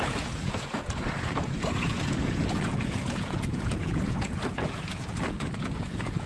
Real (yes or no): no